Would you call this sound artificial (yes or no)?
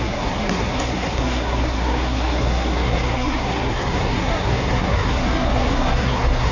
yes